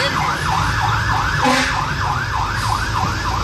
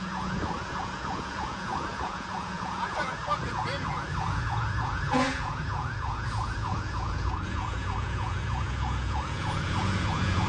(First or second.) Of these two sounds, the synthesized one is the second